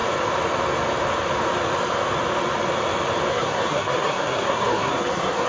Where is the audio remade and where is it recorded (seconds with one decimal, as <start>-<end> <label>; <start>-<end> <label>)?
0.0-3.3 recorded; 3.3-5.5 remade